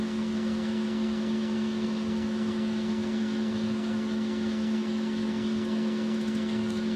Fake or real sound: fake